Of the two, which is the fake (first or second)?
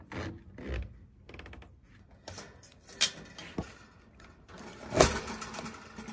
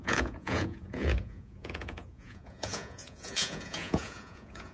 second